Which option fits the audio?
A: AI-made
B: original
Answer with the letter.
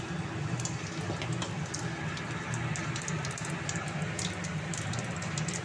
B